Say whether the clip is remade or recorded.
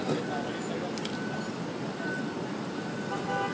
recorded